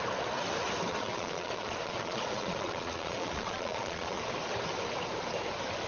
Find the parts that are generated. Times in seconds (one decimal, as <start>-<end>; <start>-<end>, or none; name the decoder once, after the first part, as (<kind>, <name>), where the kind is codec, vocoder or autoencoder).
0.9-4.2 (vocoder, Vocos)